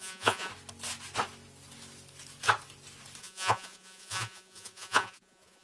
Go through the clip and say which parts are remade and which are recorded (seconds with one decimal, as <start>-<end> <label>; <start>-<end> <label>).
0.0-0.5 remade; 0.5-3.2 recorded; 3.2-5.6 remade